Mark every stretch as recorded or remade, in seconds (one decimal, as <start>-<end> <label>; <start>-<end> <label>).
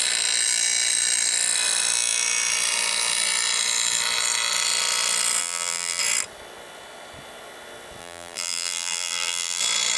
0.0-5.4 recorded; 5.4-6.0 remade; 6.0-8.0 recorded; 8.0-9.6 remade; 9.6-10.0 recorded